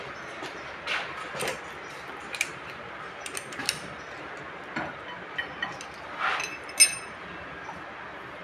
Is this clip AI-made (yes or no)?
no